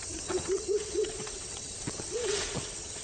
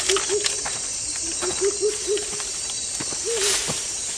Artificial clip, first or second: first